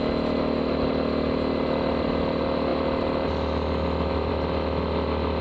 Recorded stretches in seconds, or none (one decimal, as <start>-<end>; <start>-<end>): 0.0-5.4